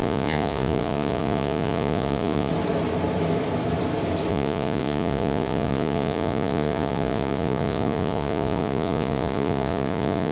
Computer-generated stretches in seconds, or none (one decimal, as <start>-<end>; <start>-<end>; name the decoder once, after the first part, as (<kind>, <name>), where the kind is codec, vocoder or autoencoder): 0.0-2.5 (vocoder, Vocos); 4.3-10.3